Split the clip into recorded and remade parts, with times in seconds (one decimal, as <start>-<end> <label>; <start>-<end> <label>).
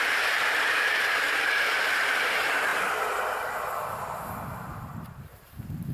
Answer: 0.0-2.7 remade; 2.7-4.5 recorded; 4.5-5.9 remade